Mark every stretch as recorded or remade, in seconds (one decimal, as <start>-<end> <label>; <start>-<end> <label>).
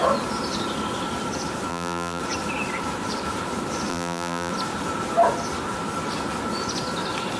0.0-1.7 recorded; 1.7-2.2 remade; 2.2-3.9 recorded; 3.9-4.5 remade; 4.5-7.4 recorded